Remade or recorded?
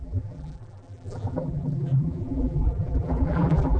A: remade